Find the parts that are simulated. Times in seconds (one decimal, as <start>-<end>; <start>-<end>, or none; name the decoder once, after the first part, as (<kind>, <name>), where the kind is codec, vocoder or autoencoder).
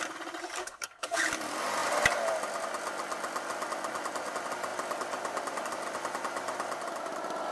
0.6-1.2 (codec, SNAC)